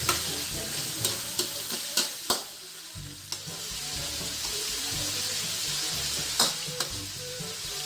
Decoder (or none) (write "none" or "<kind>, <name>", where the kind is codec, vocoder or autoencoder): vocoder, BigVGAN v2